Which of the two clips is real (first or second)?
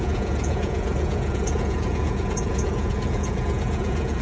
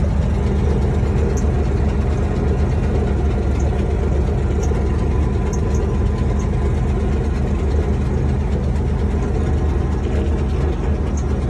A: second